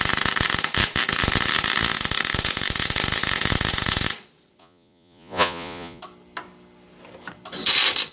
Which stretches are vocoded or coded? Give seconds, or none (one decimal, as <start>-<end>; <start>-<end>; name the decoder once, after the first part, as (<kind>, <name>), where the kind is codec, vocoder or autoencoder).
4.6-6.0 (vocoder, Vocos)